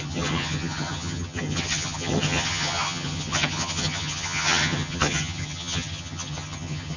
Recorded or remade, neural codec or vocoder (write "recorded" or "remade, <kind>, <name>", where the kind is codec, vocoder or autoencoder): remade, vocoder, HiFi-GAN